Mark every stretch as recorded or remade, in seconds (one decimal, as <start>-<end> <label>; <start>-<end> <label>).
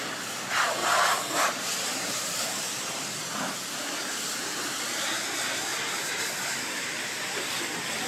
0.0-0.8 recorded; 0.8-3.1 remade; 3.1-5.7 recorded; 5.7-7.6 remade; 7.6-8.1 recorded